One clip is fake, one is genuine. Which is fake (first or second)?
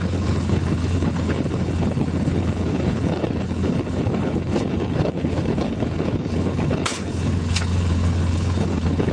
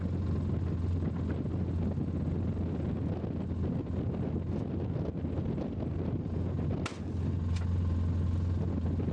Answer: first